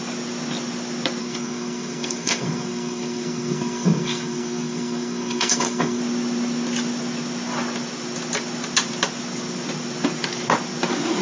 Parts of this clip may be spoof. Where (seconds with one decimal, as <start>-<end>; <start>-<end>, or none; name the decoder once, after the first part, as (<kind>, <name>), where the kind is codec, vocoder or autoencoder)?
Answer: 1.2-6.0 (codec, SNAC)